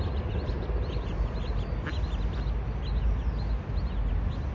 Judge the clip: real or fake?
real